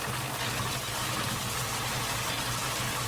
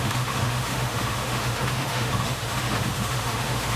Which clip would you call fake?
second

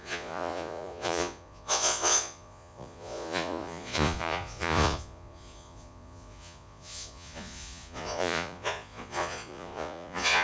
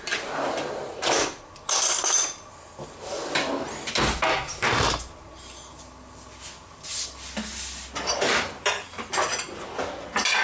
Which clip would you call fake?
first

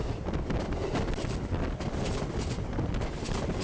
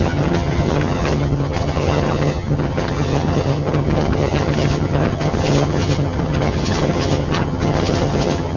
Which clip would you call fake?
second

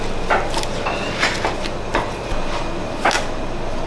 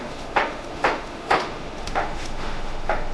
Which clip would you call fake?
second